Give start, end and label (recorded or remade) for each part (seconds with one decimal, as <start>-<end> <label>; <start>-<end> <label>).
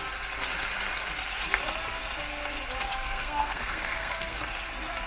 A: 0.0-2.8 recorded; 2.8-4.4 remade; 4.4-5.1 recorded